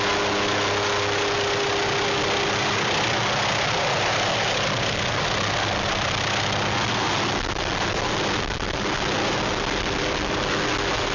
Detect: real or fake real